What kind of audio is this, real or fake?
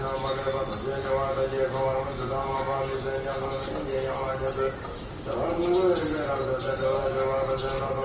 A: real